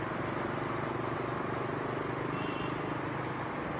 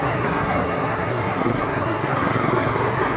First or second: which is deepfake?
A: second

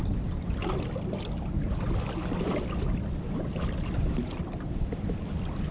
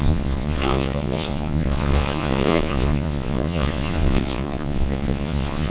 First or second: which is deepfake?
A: second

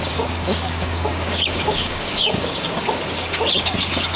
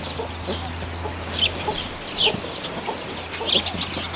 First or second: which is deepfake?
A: first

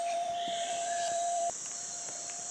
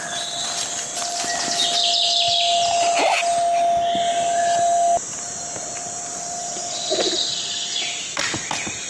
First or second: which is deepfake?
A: first